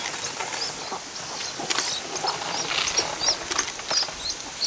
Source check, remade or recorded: recorded